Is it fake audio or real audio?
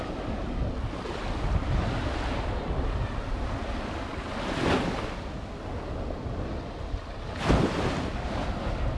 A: real